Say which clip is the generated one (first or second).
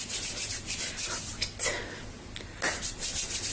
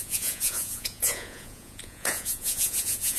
second